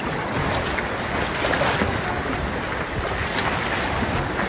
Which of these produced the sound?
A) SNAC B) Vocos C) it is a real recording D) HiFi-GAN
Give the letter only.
C